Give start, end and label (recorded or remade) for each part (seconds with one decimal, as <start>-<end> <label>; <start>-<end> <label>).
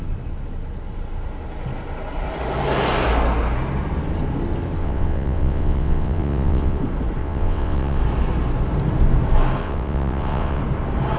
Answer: 0.0-4.8 recorded; 4.8-6.8 remade; 6.8-7.2 recorded; 7.2-8.0 remade; 8.0-9.6 recorded; 9.6-10.6 remade; 10.6-11.2 recorded